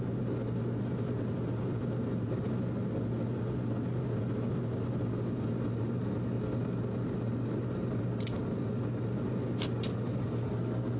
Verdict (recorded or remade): recorded